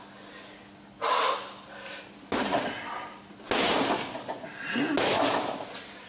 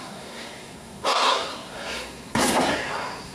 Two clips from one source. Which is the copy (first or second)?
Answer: second